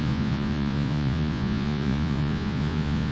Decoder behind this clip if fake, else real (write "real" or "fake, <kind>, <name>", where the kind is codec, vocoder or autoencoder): fake, vocoder, Vocos